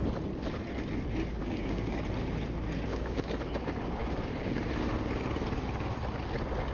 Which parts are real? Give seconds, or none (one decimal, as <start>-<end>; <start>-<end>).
0.0-1.4; 2.0-2.9; 3.4-4.0; 4.6-6.7

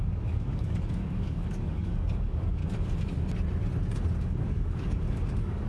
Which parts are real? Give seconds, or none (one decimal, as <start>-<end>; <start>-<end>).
2.6-4.2